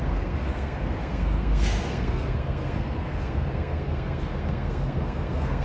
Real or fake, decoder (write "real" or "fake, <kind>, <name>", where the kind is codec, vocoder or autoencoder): fake, codec, SNAC